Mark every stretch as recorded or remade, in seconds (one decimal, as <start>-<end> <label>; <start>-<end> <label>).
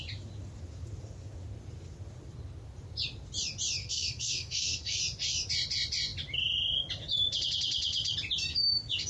0.0-3.8 recorded; 3.8-5.0 remade; 5.0-9.1 recorded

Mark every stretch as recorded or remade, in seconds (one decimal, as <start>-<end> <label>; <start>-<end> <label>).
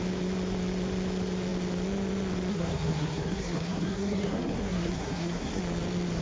0.0-2.5 recorded; 2.5-5.6 remade; 5.6-6.2 recorded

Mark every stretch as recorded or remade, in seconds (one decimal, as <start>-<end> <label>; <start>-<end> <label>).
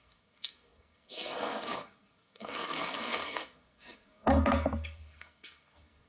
0.0-6.1 remade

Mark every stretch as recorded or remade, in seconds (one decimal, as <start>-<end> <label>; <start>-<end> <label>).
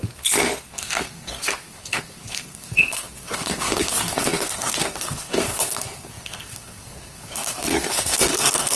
0.0-8.8 remade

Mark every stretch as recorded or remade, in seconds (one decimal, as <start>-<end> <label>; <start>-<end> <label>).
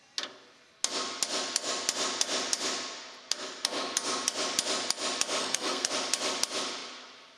0.0-5.4 recorded; 5.4-5.9 remade; 5.9-7.4 recorded